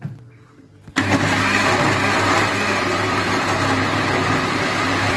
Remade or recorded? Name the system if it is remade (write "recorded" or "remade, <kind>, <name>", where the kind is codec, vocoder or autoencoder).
recorded